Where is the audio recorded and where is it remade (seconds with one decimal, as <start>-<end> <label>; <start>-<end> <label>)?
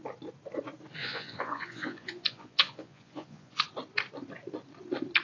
0.0-1.0 recorded; 1.0-3.6 remade; 3.6-5.2 recorded